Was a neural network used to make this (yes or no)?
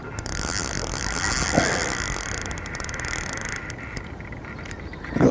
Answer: no